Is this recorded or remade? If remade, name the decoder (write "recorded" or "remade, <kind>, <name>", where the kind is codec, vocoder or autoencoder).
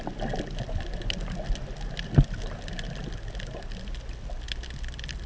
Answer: recorded